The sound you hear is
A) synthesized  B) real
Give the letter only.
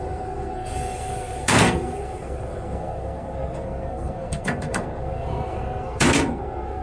A